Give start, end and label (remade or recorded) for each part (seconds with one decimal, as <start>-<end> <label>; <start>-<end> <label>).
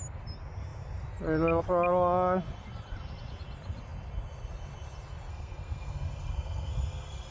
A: 0.0-5.3 recorded; 5.3-7.3 remade